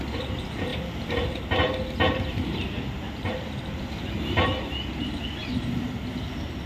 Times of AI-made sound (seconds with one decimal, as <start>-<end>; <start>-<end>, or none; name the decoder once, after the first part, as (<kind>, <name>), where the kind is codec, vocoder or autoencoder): none